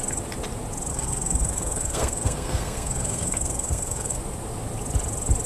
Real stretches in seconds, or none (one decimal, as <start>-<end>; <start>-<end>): 0.0-0.9; 4.2-5.5

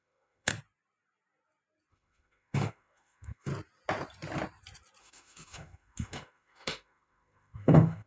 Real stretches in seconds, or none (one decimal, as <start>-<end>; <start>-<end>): 0.5-1.9; 3.5-5.0

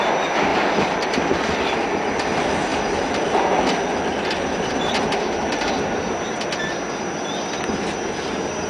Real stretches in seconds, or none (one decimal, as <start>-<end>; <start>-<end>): 0.0-4.1; 6.0-8.7

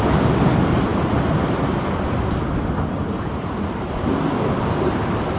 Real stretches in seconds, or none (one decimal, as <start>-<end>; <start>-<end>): 0.0-5.4

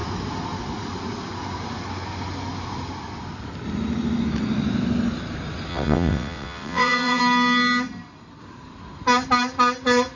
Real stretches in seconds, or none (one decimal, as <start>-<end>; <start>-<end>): 0.0-5.7; 7.2-10.2

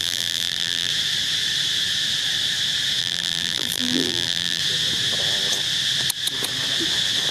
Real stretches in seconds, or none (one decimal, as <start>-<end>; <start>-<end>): 0.9-3.0; 4.6-7.3

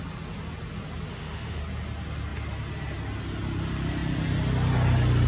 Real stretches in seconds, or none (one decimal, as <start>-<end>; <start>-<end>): 0.0-1.1; 1.6-5.3

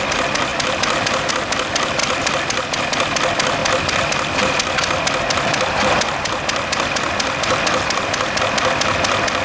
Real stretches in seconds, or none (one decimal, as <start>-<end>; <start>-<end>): 0.0-0.5; 1.3-2.0; 2.8-3.6; 8.4-9.4